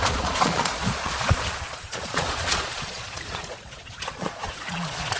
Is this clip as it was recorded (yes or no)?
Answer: no